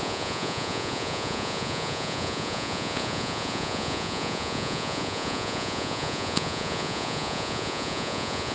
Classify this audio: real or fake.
fake